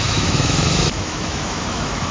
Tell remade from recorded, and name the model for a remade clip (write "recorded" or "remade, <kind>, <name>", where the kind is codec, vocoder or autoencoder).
remade, autoencoder, DAC-VAE